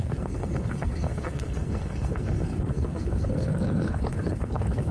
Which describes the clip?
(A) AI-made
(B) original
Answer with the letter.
A